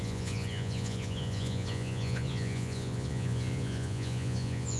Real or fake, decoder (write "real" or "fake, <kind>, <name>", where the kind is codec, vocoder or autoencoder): fake, vocoder, Vocos